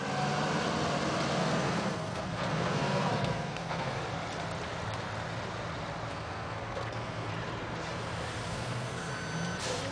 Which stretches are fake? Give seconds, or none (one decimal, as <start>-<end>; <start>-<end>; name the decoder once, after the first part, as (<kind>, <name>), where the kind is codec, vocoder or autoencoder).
1.4-4.0 (codec, SNAC); 6.1-7.3; 8.5-9.1

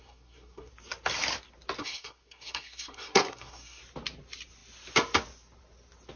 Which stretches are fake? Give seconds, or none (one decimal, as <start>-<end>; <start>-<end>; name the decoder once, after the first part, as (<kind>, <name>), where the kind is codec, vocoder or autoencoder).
0.0-0.7 (codec, SNAC); 1.8-3.8